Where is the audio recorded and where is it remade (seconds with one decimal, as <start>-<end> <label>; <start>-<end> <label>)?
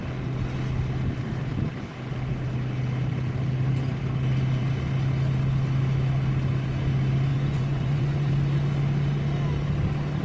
0.0-7.3 recorded; 7.3-8.3 remade; 8.3-10.2 recorded